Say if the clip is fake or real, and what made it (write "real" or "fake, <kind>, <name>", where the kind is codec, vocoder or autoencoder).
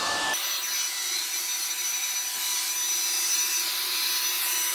real